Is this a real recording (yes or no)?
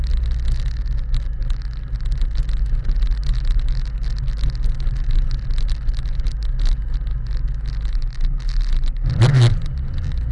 yes